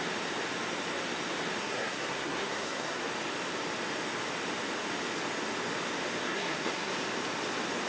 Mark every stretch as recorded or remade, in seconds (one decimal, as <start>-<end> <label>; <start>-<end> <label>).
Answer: 0.0-1.6 recorded; 1.6-3.1 remade; 3.1-6.2 recorded; 6.2-6.9 remade; 6.9-7.9 recorded